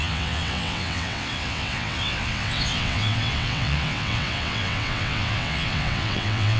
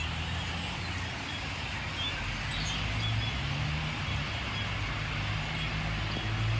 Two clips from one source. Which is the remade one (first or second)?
first